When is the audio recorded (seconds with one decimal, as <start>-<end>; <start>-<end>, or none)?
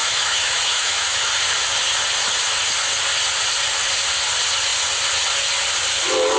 1.3-6.4